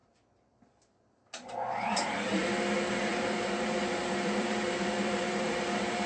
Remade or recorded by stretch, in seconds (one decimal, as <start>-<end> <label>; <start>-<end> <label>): 0.0-2.5 remade; 2.5-3.1 recorded; 3.1-6.1 remade